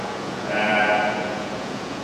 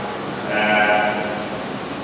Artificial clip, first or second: first